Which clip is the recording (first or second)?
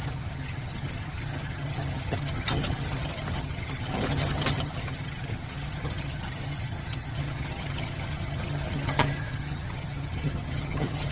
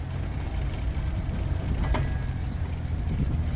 second